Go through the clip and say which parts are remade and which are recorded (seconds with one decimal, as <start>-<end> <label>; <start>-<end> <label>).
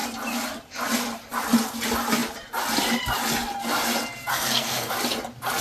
0.0-4.3 recorded; 4.3-4.9 remade; 4.9-5.6 recorded